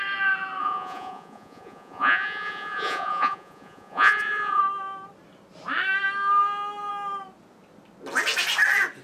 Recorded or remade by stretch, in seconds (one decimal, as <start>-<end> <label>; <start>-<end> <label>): 0.0-0.6 recorded; 0.6-4.6 remade; 4.6-9.0 recorded